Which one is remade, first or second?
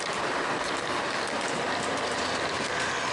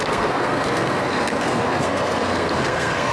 second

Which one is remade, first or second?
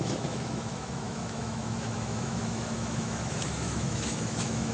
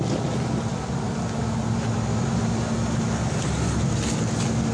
first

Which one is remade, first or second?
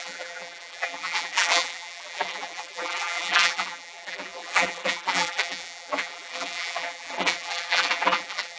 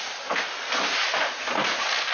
first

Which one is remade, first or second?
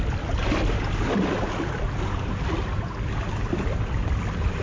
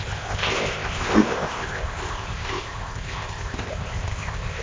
second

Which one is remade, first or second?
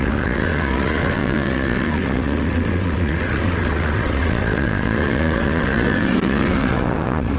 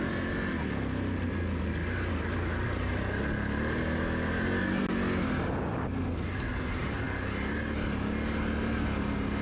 first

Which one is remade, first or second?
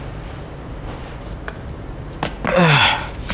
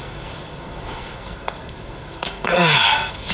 second